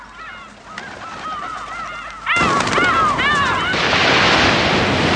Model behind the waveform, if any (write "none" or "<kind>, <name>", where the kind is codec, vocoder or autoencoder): none